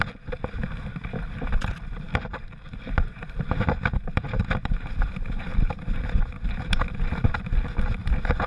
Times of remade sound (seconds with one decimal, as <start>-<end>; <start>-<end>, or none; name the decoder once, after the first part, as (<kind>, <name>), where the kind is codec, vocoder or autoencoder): 2.3-7.3 (vocoder, BigVGAN v2); 8.0-8.5